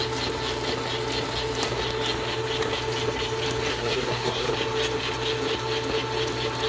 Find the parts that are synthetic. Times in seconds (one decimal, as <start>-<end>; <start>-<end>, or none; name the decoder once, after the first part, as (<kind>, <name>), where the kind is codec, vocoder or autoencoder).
3.7-4.5 (codec, SNAC)